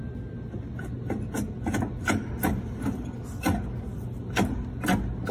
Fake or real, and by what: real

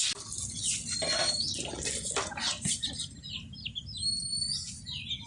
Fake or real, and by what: real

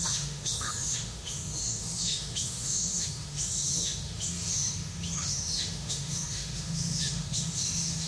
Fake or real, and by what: fake, autoencoder, DAC-VAE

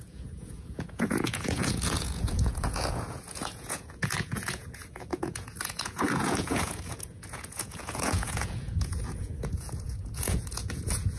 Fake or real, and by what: fake, vocoder, Vocos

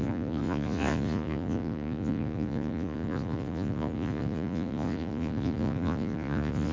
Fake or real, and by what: fake, vocoder, Vocos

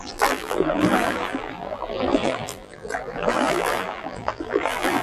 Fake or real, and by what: fake, vocoder, BigVGAN v2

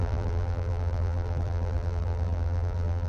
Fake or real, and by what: fake, vocoder, BigVGAN v2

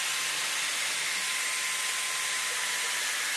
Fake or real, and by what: real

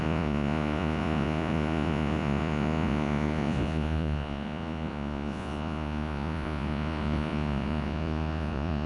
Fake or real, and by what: fake, vocoder, Vocos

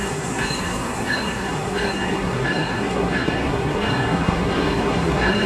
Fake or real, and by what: fake, codec, SNAC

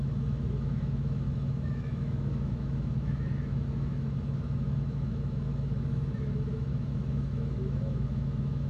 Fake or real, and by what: fake, autoencoder, DAC-VAE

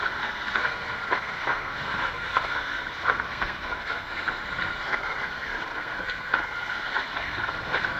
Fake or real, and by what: fake, codec, SNAC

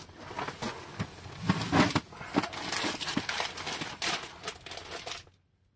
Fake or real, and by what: real